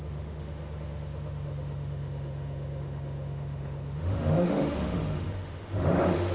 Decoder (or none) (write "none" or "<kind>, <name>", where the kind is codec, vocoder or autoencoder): autoencoder, DAC-VAE